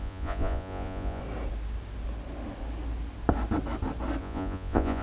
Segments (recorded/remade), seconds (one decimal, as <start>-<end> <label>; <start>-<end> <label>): 0.0-1.2 remade; 1.2-4.2 recorded; 4.2-5.0 remade